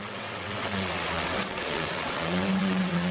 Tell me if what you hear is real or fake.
fake